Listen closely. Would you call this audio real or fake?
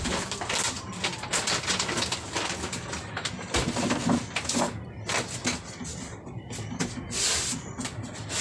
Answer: real